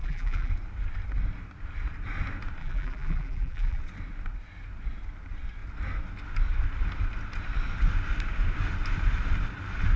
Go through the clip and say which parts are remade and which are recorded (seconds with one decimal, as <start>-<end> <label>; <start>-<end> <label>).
0.0-0.5 remade; 0.5-2.6 recorded; 2.6-3.8 remade; 3.8-10.0 recorded